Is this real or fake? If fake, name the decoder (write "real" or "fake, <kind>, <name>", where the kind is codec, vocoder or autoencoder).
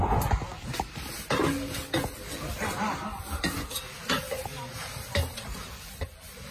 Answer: real